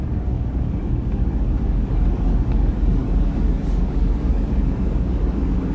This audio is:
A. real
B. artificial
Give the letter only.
B